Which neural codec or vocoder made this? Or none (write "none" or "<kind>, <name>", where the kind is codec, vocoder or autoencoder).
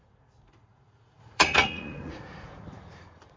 vocoder, Vocos